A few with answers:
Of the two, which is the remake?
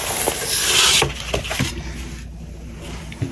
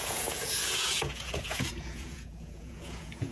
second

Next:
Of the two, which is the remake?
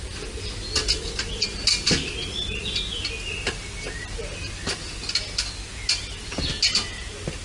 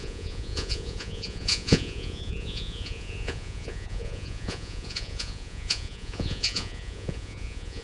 second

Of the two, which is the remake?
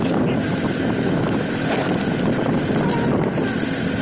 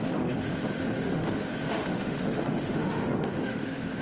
second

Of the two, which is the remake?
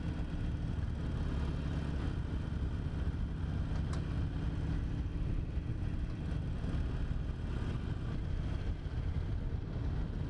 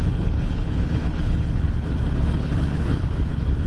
second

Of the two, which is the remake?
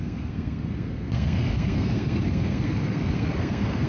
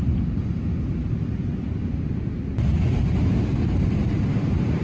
first